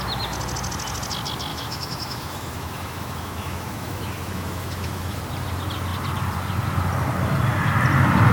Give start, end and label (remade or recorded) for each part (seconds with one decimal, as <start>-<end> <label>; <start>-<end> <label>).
0.0-1.5 recorded; 1.5-5.2 remade; 5.2-8.3 recorded